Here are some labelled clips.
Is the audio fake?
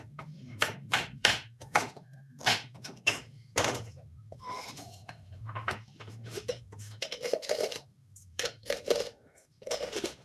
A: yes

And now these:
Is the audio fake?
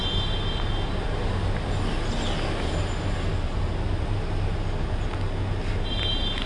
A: no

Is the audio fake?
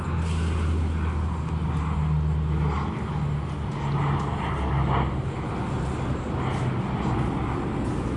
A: no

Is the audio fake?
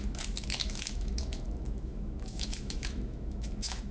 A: yes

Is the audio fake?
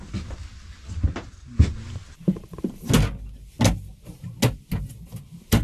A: no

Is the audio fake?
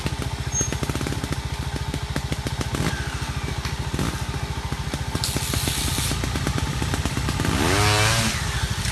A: no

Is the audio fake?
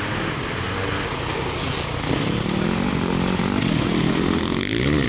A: no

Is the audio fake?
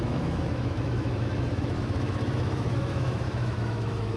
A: yes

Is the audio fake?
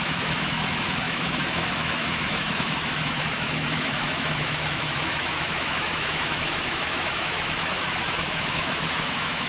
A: yes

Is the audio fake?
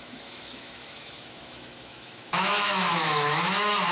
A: yes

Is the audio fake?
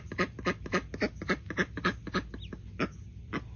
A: no